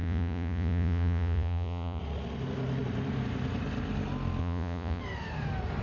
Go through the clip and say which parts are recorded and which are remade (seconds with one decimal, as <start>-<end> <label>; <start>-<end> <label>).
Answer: 0.0-2.0 remade; 2.0-4.4 recorded; 4.4-5.0 remade; 5.0-5.8 recorded